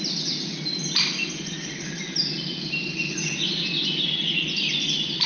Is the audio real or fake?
real